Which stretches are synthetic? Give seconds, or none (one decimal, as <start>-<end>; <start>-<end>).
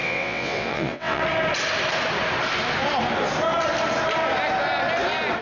0.0-1.2